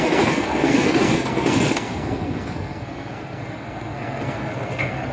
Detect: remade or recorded remade